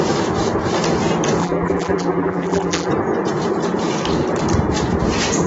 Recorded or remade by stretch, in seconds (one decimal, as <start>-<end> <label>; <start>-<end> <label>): 0.0-1.4 recorded; 1.4-2.9 remade; 2.9-5.5 recorded